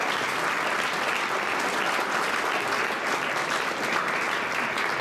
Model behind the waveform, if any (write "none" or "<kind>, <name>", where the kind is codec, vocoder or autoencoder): none